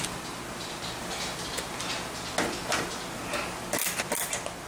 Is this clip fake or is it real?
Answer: real